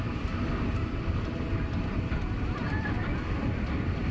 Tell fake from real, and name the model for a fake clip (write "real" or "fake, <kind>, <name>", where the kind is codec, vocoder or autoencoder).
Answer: real